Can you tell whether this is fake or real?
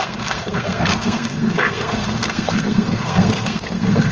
fake